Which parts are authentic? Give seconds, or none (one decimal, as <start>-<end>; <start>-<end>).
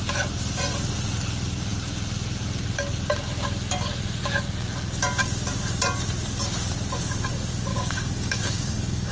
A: 0.0-7.7